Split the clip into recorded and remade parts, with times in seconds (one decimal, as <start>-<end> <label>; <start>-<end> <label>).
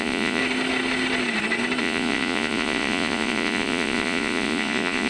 0.0-0.4 remade; 0.4-1.8 recorded; 1.8-5.1 remade